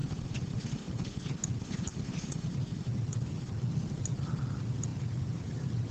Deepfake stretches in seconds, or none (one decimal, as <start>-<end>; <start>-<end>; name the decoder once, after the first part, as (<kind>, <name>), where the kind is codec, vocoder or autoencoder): 0.0-0.8 (vocoder, BigVGAN v2); 1.9-2.8; 4.9-5.9